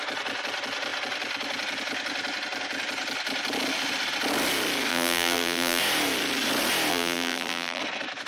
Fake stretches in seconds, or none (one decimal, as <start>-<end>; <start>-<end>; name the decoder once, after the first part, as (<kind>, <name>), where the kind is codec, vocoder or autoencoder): 4.9-5.8 (vocoder, BigVGAN v2); 6.9-7.8